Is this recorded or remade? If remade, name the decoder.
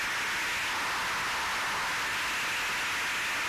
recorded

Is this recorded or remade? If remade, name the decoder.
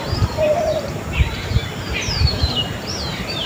remade, vocoder, BigVGAN v2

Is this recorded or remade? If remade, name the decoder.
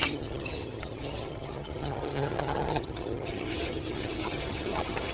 remade, vocoder, HiFi-GAN